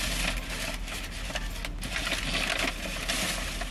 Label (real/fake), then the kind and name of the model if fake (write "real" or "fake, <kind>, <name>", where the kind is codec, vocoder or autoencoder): real